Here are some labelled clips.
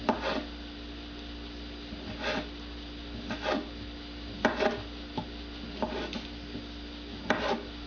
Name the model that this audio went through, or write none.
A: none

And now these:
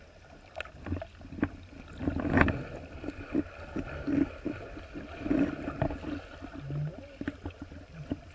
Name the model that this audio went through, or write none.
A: none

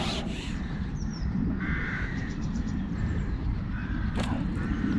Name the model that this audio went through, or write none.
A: vocoder, BigVGAN v2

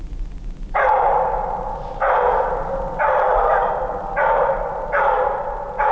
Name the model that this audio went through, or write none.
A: none